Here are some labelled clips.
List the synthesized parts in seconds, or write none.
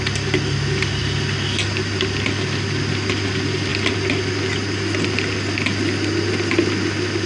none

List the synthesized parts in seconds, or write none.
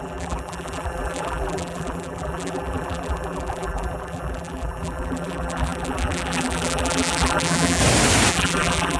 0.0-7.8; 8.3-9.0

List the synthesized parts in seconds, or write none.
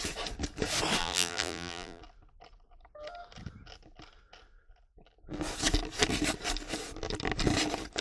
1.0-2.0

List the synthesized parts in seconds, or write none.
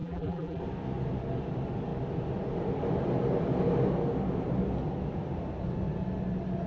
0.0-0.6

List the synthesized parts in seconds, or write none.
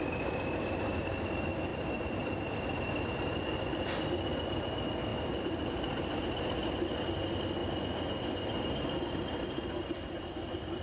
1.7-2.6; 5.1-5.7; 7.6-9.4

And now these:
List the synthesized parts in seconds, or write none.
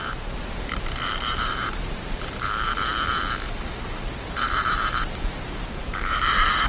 0.0-2.7; 4.2-6.7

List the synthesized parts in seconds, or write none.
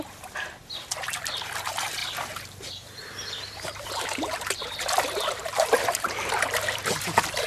0.0-7.5